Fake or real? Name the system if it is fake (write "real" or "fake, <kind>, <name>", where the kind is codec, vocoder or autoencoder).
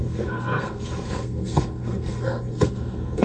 fake, codec, SNAC